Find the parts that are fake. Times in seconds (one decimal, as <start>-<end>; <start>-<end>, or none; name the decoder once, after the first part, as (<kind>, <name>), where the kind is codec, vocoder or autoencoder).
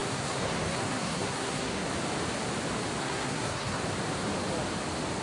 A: 0.0-1.9 (codec, SNAC); 3.0-3.8